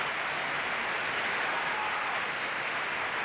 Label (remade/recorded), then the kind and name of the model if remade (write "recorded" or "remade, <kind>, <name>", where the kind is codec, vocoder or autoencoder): recorded